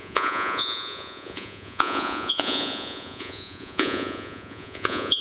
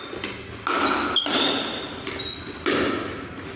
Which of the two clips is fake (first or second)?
first